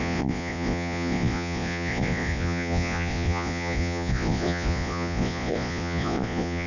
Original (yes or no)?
no